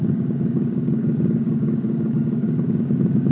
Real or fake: fake